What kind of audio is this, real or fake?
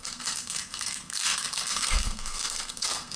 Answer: fake